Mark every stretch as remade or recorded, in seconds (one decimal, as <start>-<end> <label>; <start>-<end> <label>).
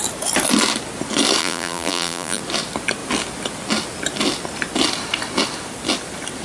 0.0-1.4 recorded; 1.4-2.4 remade; 2.4-6.4 recorded